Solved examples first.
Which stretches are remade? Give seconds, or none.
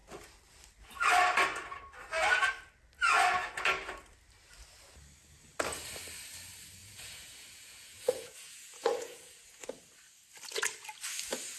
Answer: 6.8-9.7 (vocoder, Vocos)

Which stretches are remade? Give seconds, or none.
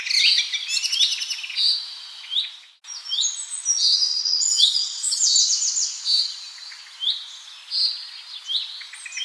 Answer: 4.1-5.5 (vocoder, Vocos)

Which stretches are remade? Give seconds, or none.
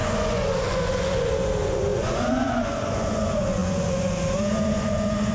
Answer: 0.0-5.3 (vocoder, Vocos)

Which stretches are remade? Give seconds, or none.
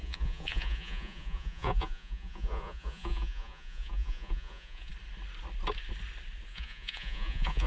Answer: 0.0-4.9 (vocoder, Vocos); 6.5-7.7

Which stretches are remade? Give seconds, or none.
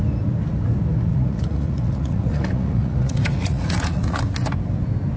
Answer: 1.1-4.2 (vocoder, Vocos)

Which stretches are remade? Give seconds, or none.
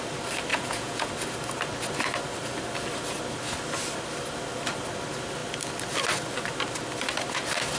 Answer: 0.5-1.1 (vocoder, Vocos)